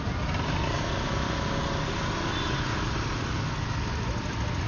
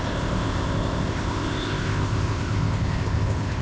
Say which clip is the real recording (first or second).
first